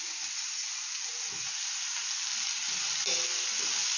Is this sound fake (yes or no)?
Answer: no